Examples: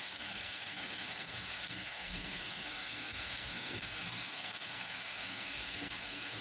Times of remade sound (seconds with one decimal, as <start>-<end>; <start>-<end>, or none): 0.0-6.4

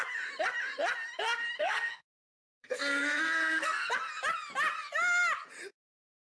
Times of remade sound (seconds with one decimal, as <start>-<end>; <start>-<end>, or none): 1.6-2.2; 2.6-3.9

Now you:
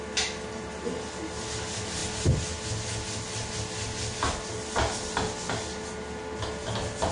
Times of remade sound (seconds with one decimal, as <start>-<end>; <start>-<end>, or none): none

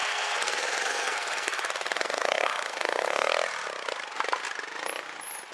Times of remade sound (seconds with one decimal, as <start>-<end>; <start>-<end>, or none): 0.0-3.3